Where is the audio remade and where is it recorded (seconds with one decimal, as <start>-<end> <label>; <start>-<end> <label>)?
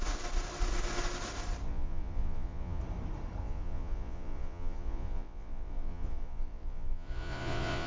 0.0-1.7 recorded; 1.7-2.8 remade; 2.8-3.4 recorded; 3.4-7.9 remade